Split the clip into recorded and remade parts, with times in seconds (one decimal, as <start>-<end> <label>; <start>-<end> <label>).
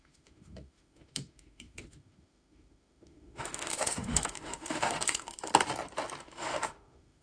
0.0-5.5 remade; 5.5-6.2 recorded; 6.2-7.2 remade